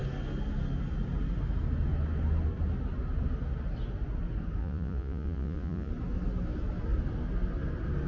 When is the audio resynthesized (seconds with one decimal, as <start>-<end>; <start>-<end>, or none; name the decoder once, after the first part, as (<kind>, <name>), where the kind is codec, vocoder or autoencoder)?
4.6-5.9 (vocoder, Vocos)